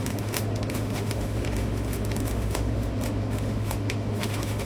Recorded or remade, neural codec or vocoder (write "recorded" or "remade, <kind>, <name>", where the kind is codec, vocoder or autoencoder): remade, autoencoder, DAC-VAE